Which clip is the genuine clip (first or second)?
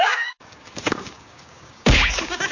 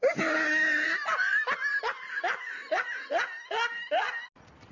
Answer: second